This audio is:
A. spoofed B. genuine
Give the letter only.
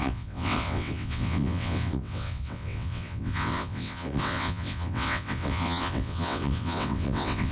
A